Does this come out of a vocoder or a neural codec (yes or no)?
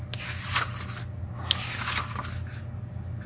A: no